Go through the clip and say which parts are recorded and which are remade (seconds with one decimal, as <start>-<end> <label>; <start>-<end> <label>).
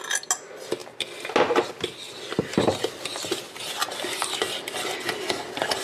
0.0-5.8 recorded